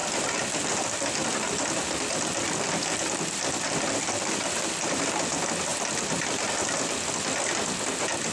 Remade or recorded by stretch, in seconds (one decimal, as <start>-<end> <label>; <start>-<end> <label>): 0.0-5.0 remade; 5.0-5.7 recorded; 5.7-6.6 remade; 6.6-8.3 recorded